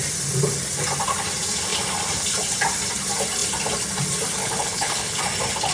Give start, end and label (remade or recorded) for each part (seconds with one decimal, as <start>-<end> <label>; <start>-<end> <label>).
0.0-4.4 recorded; 4.4-5.2 remade; 5.2-5.7 recorded